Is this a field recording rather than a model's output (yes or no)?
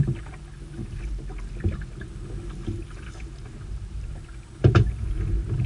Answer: yes